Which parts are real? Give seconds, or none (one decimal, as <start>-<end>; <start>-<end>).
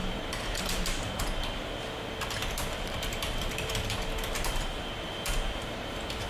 1.2-2.4